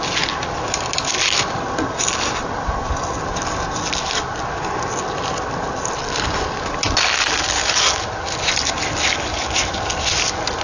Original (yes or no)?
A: yes